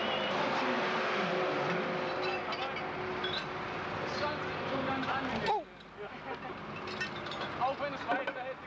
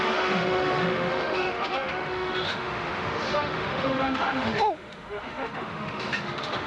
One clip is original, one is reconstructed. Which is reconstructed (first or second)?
second